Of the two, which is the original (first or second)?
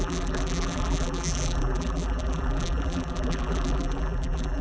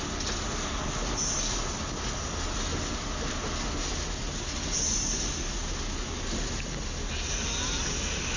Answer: second